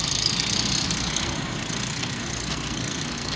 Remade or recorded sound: remade